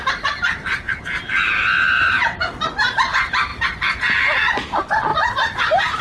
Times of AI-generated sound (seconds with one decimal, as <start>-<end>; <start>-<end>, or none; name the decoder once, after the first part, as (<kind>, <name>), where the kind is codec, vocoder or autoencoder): 0.0-2.4 (vocoder, BigVGAN v2); 3.5-4.1; 5.1-6.0